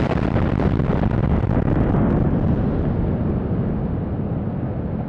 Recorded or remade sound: recorded